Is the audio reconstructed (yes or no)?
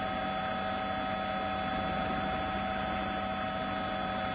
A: no